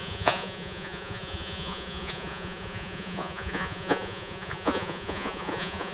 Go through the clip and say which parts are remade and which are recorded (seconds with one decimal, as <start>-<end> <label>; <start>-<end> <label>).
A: 0.0-5.9 remade